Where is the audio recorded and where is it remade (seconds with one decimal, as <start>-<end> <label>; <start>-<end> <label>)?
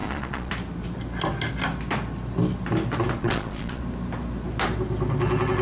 0.0-0.5 remade; 0.5-3.2 recorded; 3.2-3.8 remade; 3.8-5.6 recorded